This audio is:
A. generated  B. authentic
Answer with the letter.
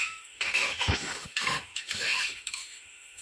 A